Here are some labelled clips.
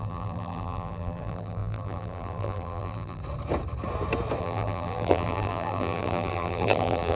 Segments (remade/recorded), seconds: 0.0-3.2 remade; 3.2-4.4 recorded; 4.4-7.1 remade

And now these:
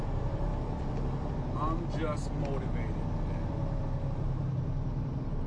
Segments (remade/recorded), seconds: 0.0-0.5 remade; 0.5-3.8 recorded; 3.8-5.5 remade

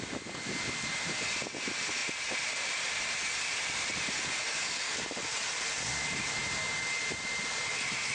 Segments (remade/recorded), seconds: 0.0-2.0 recorded; 2.0-5.9 remade; 5.9-8.1 recorded

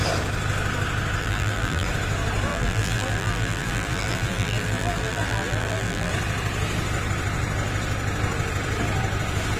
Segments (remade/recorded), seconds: 0.0-1.2 recorded; 1.2-1.9 remade; 1.9-2.5 recorded; 2.5-6.1 remade; 6.1-9.6 recorded

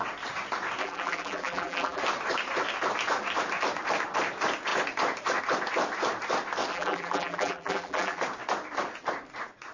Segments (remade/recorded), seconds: 0.0-0.8 recorded; 0.8-2.0 remade; 2.0-6.7 recorded; 6.7-8.2 remade; 8.2-9.7 recorded